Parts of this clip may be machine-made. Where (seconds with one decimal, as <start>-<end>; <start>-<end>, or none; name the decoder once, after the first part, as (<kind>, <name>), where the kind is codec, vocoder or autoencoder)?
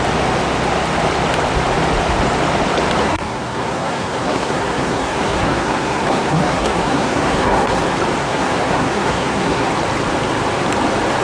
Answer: 3.0-7.8 (codec, SNAC); 8.2-9.7